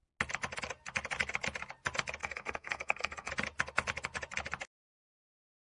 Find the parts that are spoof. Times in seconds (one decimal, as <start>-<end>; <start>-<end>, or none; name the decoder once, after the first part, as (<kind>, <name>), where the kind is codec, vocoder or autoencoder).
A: 2.2-3.3 (codec, SNAC)